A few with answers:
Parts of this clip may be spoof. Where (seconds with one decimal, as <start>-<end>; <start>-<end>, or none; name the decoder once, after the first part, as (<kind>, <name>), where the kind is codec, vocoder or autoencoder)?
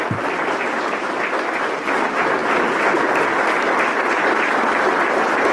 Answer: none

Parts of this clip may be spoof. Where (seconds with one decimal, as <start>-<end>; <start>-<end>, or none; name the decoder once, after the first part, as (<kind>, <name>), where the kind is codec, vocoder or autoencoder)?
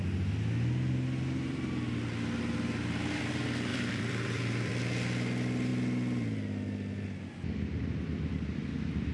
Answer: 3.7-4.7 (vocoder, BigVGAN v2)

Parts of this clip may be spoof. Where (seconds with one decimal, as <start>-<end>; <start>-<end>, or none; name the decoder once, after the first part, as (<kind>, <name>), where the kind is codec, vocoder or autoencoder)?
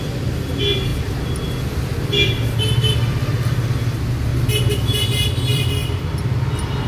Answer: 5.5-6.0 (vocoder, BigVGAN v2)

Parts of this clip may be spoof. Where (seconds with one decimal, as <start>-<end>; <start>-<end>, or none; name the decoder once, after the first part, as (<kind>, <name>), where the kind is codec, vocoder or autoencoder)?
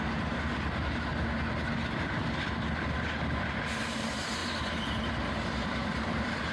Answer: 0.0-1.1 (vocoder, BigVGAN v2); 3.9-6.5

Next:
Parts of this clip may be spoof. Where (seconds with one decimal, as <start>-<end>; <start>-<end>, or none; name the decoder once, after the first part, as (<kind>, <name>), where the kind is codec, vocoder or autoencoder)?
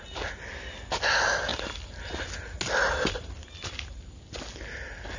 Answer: none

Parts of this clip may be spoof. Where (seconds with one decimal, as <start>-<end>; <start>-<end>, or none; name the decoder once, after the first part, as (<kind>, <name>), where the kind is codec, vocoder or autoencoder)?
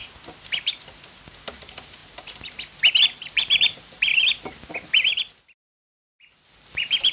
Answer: 1.6-2.0 (vocoder, BigVGAN v2); 3.0-4.1; 5.4-7.1